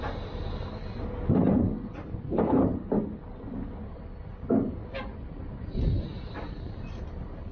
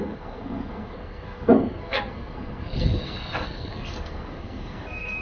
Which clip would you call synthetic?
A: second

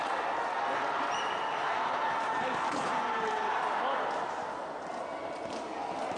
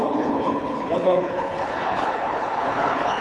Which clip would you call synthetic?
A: second